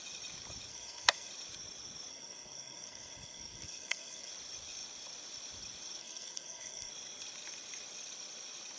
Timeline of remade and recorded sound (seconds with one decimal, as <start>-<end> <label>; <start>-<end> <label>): 0.0-0.7 recorded; 0.7-1.3 remade; 1.3-2.1 recorded; 2.1-4.3 remade; 4.3-6.0 recorded; 6.0-6.9 remade; 6.9-8.8 recorded